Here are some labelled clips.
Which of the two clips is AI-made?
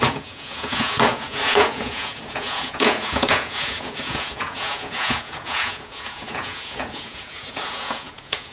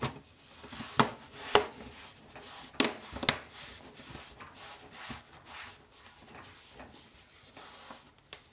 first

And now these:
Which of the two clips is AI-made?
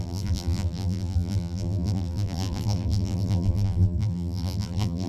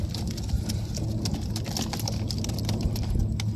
first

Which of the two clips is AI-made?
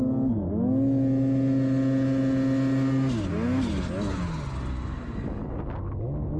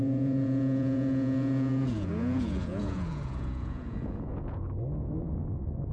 second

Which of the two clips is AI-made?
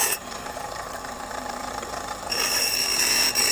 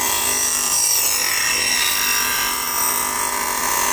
first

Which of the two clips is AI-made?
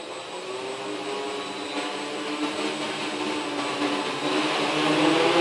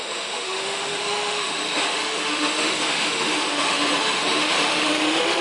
second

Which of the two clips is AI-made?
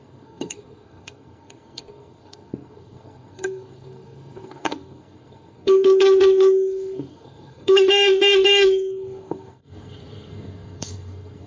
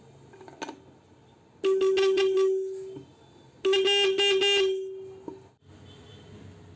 first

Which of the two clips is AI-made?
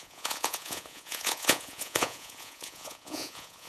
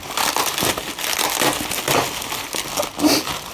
first